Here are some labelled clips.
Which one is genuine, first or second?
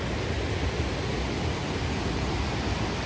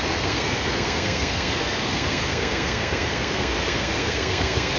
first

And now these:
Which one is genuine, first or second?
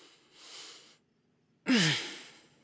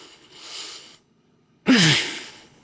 first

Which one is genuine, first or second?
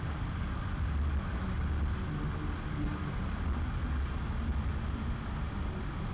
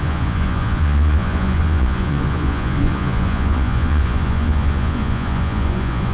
first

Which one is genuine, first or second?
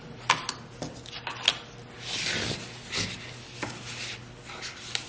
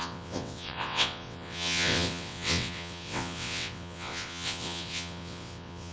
first